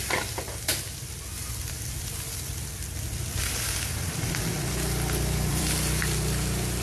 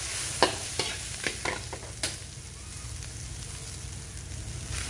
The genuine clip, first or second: second